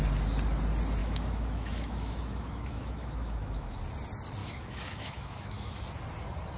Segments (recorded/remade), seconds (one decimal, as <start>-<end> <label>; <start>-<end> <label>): 0.0-1.0 recorded; 1.0-3.8 remade; 3.8-4.4 recorded; 4.4-5.8 remade; 5.8-6.6 recorded